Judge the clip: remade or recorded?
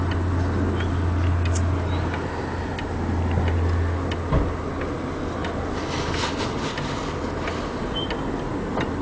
recorded